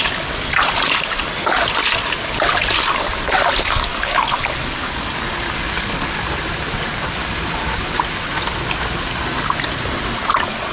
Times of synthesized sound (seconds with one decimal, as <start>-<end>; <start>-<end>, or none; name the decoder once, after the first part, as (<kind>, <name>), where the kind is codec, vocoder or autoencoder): 3.9-6.2 (codec, DAC)